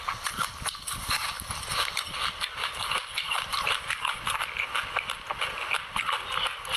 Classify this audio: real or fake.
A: real